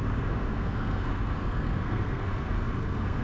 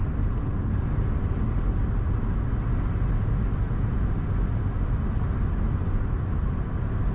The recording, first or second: second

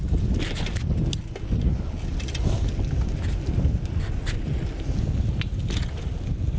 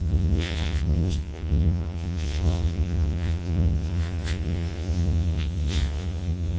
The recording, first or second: first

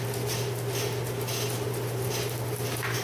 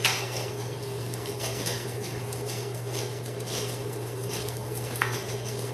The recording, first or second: first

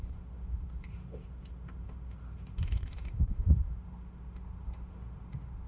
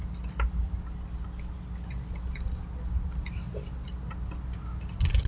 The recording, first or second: second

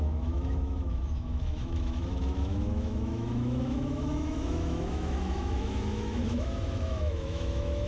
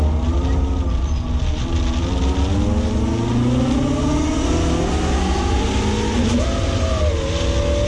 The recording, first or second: second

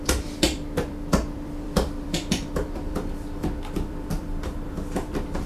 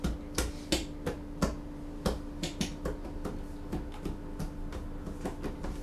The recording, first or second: second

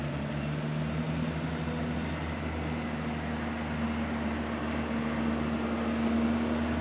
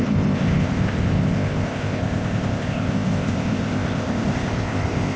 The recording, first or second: first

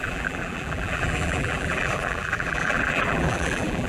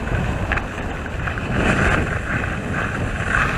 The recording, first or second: second